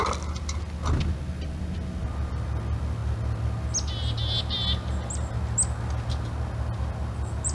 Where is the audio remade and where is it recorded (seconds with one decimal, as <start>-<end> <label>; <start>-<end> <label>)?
0.0-7.5 recorded